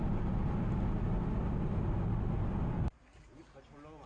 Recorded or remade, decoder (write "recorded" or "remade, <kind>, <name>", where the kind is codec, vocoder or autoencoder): recorded